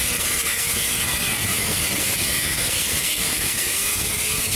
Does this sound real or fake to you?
fake